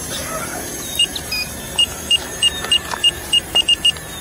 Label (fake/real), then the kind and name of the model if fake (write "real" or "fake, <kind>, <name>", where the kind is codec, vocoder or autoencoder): fake, vocoder, BigVGAN v2